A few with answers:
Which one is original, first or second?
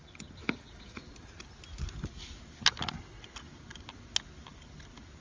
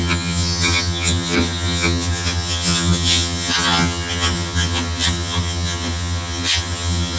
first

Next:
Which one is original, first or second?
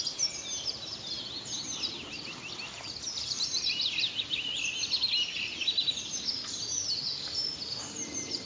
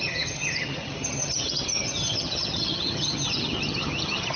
first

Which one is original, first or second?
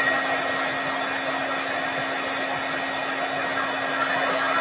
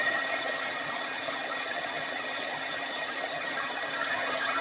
first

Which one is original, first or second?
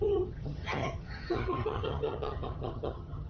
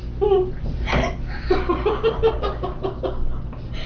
second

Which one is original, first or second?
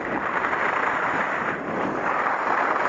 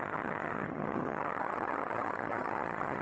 first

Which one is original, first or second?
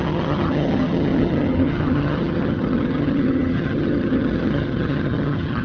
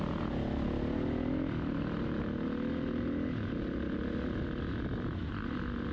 second